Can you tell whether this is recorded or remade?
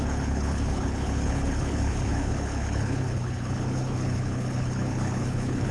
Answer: remade